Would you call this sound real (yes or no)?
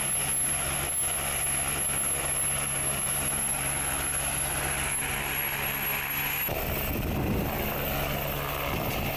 yes